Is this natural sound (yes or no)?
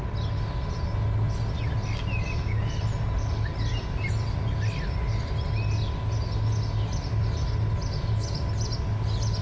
yes